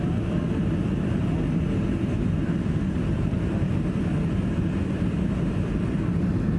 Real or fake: real